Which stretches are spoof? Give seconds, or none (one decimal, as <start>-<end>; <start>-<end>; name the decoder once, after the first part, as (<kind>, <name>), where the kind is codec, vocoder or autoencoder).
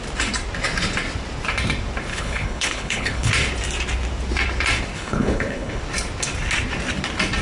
2.1-3.3 (codec, HILCodec); 4.9-5.8